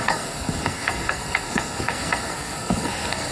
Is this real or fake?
fake